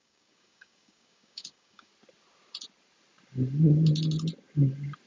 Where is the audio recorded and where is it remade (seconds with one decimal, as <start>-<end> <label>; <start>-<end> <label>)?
0.0-1.9 remade; 1.9-5.1 recorded